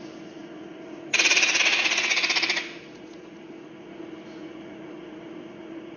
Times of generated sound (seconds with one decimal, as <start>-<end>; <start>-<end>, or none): 0.0-6.0